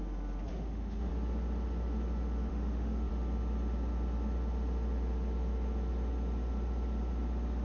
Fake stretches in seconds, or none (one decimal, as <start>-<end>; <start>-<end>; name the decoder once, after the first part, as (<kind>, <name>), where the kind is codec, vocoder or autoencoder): 0.5-1.1 (autoencoder, DAC-VAE); 2.5-3.1